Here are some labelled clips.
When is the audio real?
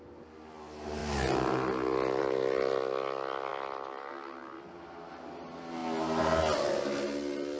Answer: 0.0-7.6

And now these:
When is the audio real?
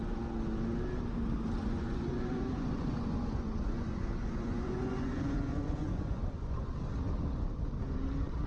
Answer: 0.0-1.6; 6.7-8.5